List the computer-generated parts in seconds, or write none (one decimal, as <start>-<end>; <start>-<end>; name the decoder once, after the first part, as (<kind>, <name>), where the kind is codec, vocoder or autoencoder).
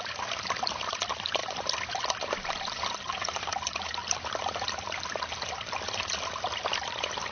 none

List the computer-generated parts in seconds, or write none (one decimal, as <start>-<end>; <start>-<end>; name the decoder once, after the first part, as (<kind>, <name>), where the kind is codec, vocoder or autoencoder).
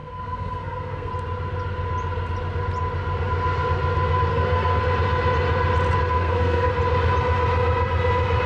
0.0-1.1 (codec, SNAC); 4.3-4.8; 6.1-6.7